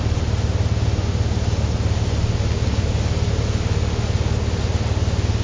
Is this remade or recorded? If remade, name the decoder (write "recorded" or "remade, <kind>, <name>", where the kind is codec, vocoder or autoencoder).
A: recorded